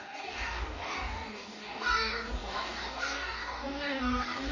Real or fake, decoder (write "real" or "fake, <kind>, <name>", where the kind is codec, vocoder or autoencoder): fake, codec, DAC